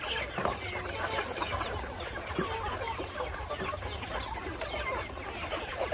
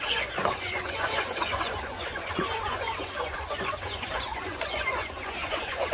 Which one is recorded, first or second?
first